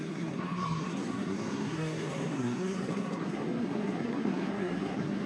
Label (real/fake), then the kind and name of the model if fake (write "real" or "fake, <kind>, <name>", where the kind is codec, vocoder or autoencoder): fake, codec, SNAC